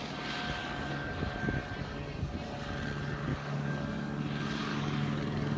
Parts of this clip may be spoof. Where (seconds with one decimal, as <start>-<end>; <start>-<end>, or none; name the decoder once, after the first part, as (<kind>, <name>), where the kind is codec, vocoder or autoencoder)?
0.6-1.1 (codec, DAC); 3.3-4.2; 4.7-5.6